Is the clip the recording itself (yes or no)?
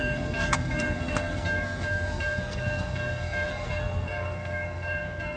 no